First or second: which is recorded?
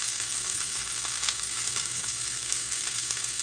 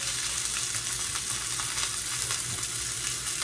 second